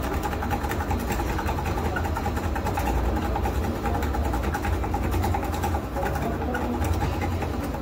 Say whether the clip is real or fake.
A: real